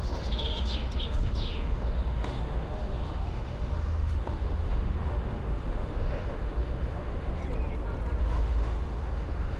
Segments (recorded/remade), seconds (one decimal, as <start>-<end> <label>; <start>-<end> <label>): 0.0-7.4 remade; 7.4-8.2 recorded; 8.2-9.6 remade